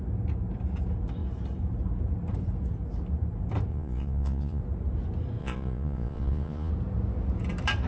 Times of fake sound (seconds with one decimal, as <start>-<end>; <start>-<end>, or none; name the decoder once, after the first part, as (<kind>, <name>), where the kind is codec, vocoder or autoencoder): 3.7-4.6 (vocoder, Vocos); 5.4-6.7